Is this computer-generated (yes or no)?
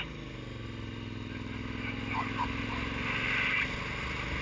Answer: no